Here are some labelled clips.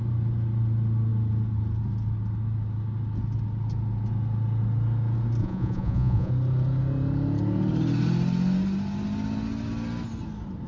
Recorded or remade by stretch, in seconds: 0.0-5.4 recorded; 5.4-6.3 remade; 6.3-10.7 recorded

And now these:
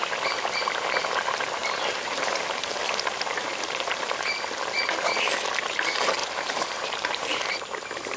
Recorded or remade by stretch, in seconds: 0.0-1.6 recorded; 1.6-2.4 remade; 2.4-6.2 recorded; 6.2-8.2 remade

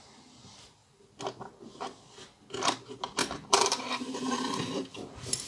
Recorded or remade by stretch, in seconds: 0.0-3.2 recorded; 3.2-5.5 remade

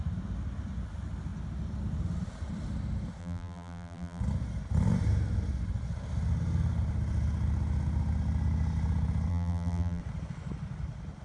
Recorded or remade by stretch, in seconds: 0.0-3.2 recorded; 3.2-4.2 remade; 4.2-9.3 recorded; 9.3-10.0 remade; 10.0-11.2 recorded